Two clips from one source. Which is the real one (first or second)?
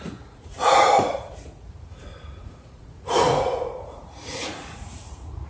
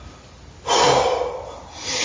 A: second